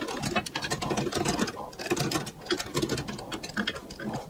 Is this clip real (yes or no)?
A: yes